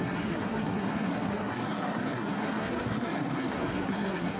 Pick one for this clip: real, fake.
fake